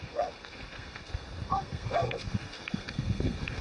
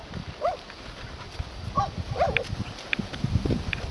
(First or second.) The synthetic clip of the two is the first